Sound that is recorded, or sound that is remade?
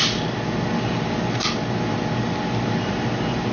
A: recorded